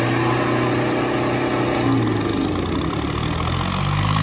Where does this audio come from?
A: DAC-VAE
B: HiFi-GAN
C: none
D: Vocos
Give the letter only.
C